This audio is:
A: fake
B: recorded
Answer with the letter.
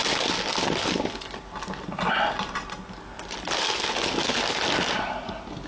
B